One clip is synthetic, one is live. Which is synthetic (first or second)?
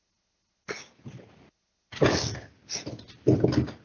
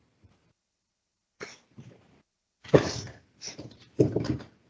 second